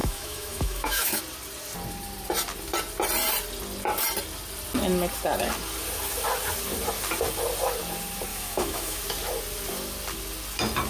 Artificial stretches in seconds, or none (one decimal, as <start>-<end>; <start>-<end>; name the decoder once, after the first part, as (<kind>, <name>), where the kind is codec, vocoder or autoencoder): 0.0-1.2 (autoencoder, DAC-VAE); 8.3-9.0